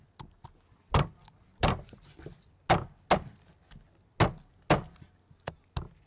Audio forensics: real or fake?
real